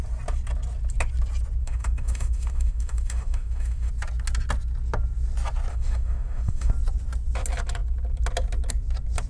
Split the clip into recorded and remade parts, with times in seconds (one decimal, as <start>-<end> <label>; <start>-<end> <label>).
0.0-1.6 recorded; 1.6-3.9 remade; 3.9-5.7 recorded; 5.7-6.7 remade; 6.7-9.3 recorded